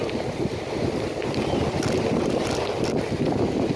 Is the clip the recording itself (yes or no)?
yes